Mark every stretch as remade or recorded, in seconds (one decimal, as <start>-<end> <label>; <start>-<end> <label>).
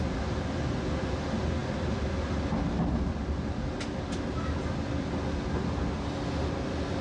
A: 0.0-7.0 recorded